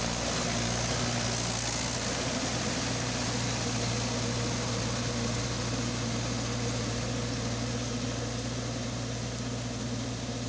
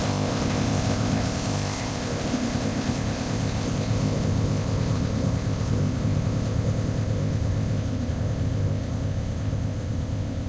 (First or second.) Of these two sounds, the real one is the first